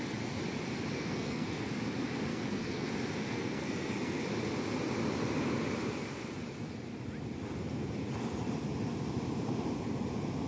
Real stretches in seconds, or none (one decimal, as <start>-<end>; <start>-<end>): 0.0-0.9; 1.7-2.3; 2.9-3.3; 4.2-10.5